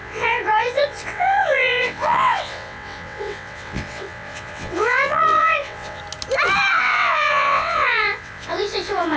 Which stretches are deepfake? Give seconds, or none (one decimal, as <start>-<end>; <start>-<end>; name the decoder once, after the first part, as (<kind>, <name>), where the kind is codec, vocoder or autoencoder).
0.0-6.0 (vocoder, WaveNeXt); 6.8-9.2